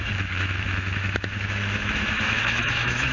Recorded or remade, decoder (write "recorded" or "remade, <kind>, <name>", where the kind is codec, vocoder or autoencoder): remade, autoencoder, DAC-VAE